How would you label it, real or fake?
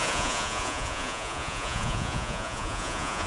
fake